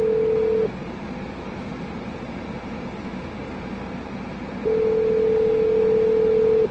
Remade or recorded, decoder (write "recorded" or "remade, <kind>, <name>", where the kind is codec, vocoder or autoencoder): recorded